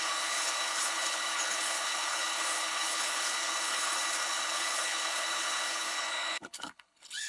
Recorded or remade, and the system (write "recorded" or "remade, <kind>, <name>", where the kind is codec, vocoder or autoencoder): remade, codec, HILCodec